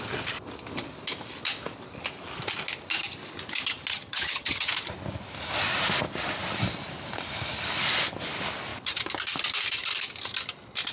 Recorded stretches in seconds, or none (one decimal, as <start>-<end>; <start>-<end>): 0.0-3.9; 4.7-10.9